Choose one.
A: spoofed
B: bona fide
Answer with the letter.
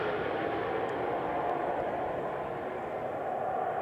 B